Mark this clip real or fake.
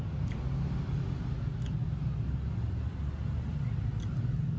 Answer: real